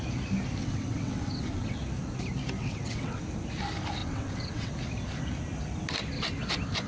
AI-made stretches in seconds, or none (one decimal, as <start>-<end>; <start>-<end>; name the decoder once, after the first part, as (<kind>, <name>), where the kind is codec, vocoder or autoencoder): 0.6-1.8 (vocoder, WaveNeXt); 2.6-3.2; 4.0-4.7